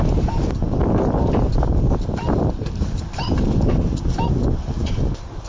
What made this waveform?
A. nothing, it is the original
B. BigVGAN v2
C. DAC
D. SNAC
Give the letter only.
A